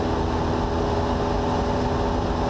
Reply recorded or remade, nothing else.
recorded